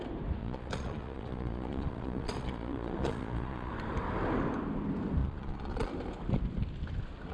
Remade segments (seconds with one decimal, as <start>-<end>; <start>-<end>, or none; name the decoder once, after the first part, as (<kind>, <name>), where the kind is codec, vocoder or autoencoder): 0.4-3.7 (vocoder, Vocos); 5.2-5.9